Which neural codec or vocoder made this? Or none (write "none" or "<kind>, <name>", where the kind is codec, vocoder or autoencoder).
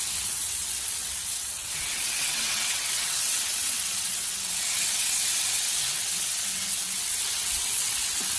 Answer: vocoder, WaveNeXt